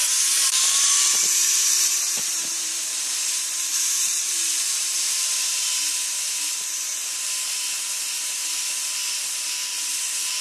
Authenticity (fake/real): fake